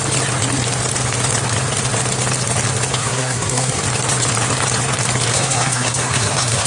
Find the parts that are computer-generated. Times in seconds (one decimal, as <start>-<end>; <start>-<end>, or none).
3.0-3.8; 5.3-6.7